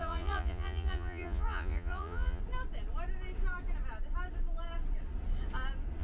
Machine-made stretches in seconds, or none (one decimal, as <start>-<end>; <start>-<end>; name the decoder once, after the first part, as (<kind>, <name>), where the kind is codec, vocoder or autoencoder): 0.0-2.4 (vocoder, Vocos)